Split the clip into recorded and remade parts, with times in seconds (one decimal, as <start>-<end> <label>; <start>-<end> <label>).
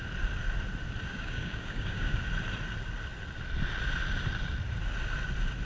0.0-1.1 recorded; 1.1-2.2 remade; 2.2-5.6 recorded